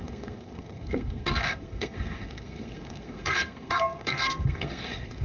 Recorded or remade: remade